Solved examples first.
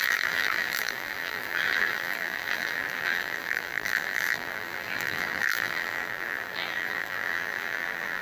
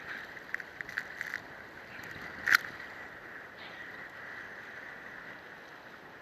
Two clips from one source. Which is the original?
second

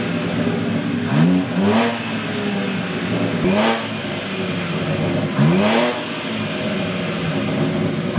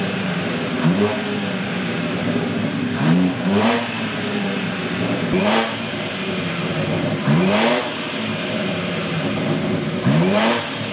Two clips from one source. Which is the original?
first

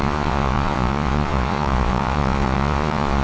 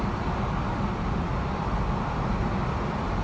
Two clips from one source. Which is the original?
second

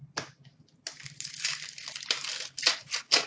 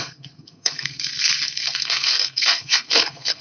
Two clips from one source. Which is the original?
first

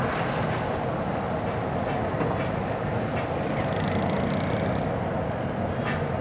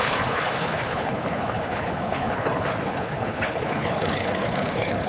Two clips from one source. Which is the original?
first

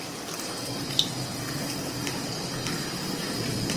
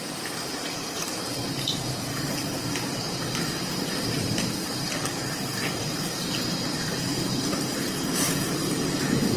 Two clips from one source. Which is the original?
first